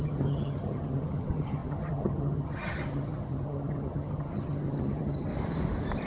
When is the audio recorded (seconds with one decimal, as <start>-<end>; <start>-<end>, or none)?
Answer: 5.3-6.1